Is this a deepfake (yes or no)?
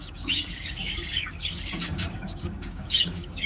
yes